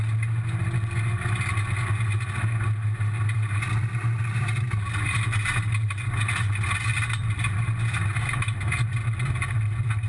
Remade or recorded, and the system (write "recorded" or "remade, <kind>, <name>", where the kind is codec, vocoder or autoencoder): recorded